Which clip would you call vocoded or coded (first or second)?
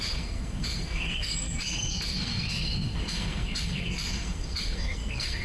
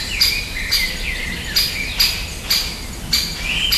first